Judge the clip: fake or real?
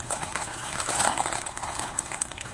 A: fake